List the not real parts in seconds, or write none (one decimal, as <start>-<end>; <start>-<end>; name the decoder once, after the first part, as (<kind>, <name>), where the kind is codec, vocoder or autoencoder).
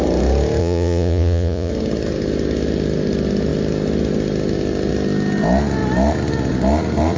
0.6-1.7 (vocoder, Vocos)